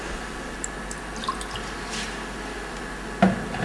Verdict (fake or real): real